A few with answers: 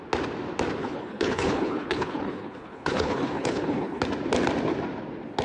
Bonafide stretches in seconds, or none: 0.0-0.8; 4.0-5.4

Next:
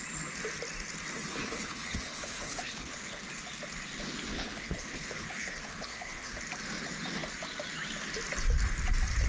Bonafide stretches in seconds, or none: 0.0-1.3; 3.2-4.3; 6.4-9.3

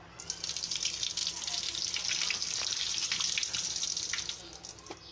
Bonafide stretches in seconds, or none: 0.0-5.1